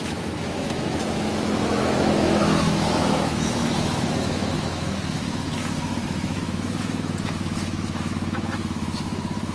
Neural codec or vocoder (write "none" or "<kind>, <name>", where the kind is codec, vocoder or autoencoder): autoencoder, DAC-VAE